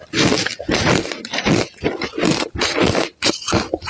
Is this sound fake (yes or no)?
no